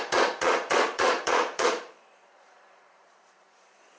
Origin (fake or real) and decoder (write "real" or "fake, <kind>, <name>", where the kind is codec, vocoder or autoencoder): fake, vocoder, Vocos